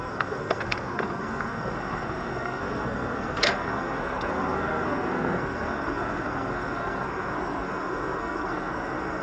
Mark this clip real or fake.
fake